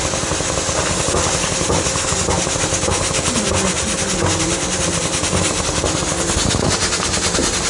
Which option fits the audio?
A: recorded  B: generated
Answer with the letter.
A